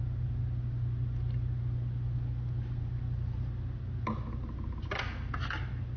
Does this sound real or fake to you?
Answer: real